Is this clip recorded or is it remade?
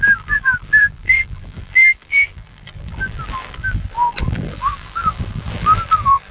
remade